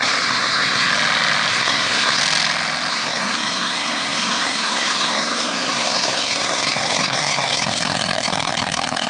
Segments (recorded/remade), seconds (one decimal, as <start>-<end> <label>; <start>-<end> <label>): 0.0-0.9 remade; 0.9-1.5 recorded; 1.5-2.2 remade; 2.2-2.9 recorded; 2.9-9.1 remade